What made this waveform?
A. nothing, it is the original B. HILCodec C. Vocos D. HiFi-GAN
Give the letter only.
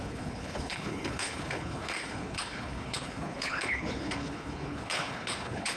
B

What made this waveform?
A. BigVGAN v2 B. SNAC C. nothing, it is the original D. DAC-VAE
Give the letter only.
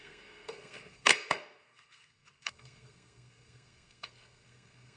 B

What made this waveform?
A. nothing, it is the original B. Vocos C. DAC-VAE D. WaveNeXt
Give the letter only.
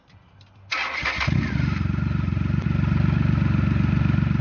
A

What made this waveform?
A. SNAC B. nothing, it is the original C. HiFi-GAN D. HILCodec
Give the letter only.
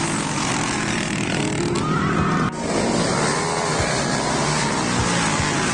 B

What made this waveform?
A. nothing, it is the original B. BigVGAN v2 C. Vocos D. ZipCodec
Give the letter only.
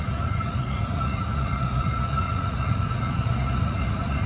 C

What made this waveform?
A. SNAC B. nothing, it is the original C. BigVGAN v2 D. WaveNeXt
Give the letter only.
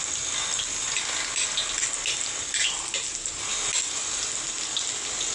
B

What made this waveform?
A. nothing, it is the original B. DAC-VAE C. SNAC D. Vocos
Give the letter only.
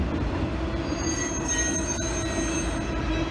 A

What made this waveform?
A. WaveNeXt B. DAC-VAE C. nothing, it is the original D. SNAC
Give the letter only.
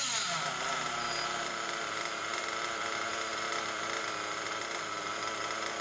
C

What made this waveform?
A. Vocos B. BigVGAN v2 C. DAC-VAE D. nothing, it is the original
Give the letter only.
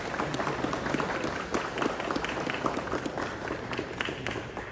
D